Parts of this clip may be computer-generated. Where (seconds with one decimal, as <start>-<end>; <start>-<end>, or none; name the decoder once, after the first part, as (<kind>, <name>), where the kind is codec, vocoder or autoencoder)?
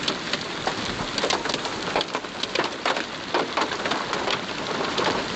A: none